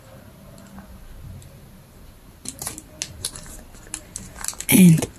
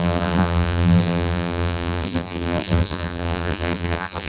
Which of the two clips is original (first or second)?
first